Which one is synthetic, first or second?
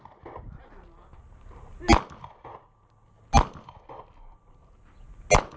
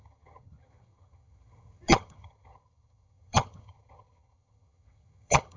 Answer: second